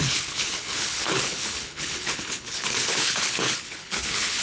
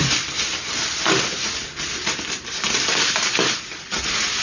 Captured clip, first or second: second